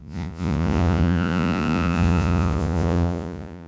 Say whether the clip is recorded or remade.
remade